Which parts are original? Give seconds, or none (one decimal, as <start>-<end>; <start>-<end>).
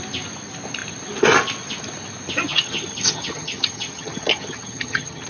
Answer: 0.0-2.5